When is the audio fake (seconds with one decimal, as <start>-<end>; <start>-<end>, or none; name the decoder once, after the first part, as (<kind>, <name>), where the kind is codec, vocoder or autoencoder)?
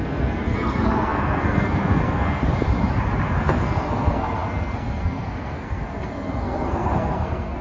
0.0-2.4 (codec, SNAC); 3.4-7.6